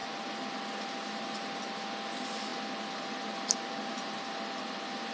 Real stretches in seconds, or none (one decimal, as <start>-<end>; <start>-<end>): 0.0-5.1